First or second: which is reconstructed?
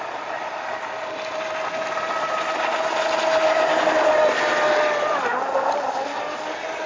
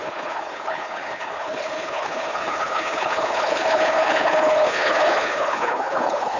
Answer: second